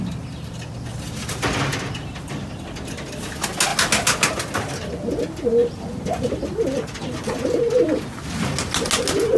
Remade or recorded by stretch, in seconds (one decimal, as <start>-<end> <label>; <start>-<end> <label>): 0.0-5.6 recorded; 5.6-7.6 remade; 7.6-9.4 recorded